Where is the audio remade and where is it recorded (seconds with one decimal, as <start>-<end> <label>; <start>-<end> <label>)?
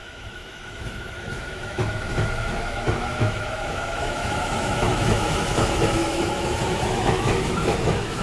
0.0-8.2 remade